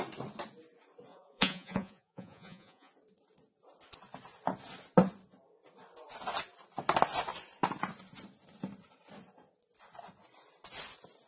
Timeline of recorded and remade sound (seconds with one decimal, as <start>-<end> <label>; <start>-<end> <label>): 0.0-1.1 recorded; 1.1-2.9 remade; 2.9-11.3 recorded